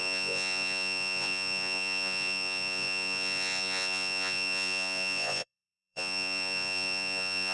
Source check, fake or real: fake